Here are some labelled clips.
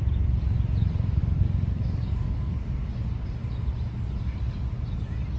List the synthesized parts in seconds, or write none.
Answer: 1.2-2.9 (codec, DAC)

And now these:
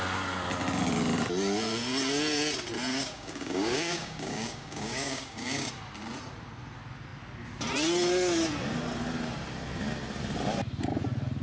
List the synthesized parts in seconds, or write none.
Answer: 2.9-5.7 (codec, DAC)

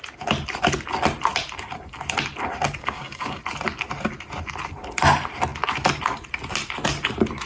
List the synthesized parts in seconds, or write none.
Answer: 2.8-3.4 (codec, DAC)

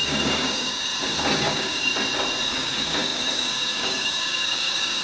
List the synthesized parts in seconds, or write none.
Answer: 0.0-0.9 (codec, DAC); 1.4-1.9; 2.5-5.0

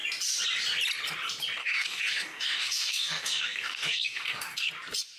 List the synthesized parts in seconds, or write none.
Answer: 1.6-4.7 (codec, DAC)